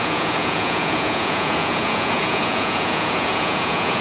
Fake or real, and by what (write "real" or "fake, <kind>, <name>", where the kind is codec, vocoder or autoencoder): fake, vocoder, Vocos